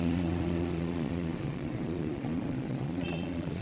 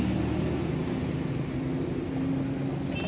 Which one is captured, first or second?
second